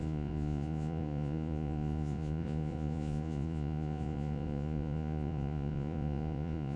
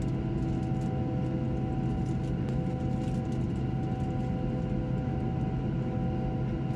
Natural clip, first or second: second